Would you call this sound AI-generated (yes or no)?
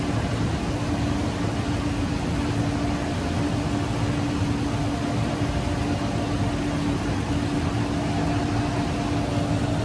no